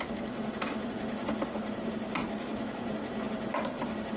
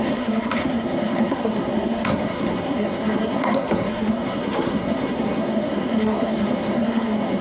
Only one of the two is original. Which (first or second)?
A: first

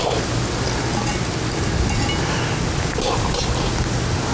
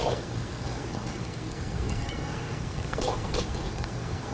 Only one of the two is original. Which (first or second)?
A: first